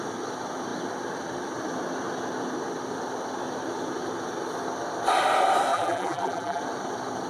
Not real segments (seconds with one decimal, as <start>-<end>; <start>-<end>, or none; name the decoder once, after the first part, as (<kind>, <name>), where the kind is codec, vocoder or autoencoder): 5.7-6.6 (vocoder, BigVGAN v2)